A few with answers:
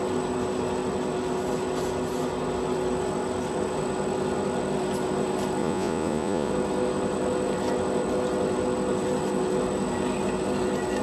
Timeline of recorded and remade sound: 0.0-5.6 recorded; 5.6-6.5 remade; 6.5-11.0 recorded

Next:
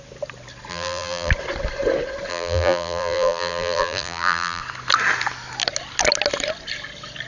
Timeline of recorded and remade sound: 0.0-0.7 recorded; 0.7-1.3 remade; 1.3-2.3 recorded; 2.3-4.6 remade; 4.6-7.3 recorded

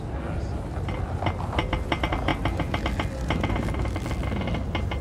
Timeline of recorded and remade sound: 0.0-5.0 recorded

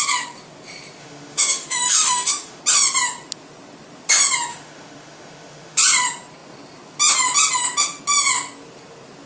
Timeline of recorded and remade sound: 0.0-1.0 recorded; 1.0-2.6 remade; 2.6-4.5 recorded; 4.5-5.8 remade; 5.8-9.3 recorded

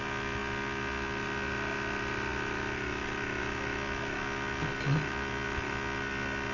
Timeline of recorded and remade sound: 0.0-6.5 recorded

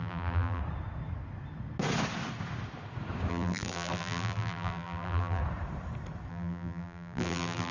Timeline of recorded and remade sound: 0.0-0.6 remade; 0.6-3.3 recorded; 3.3-5.4 remade; 5.4-6.3 recorded; 6.3-7.7 remade

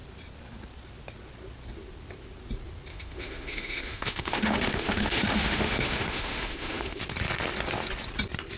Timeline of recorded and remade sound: 0.0-2.9 recorded; 2.9-7.0 remade; 7.0-8.6 recorded

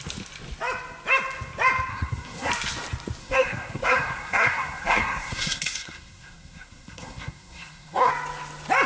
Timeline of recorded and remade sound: 0.0-1.9 recorded; 1.9-2.5 remade; 2.5-3.2 recorded; 3.2-8.1 remade; 8.1-8.9 recorded